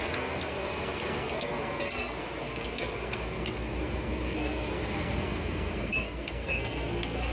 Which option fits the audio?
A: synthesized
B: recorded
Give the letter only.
A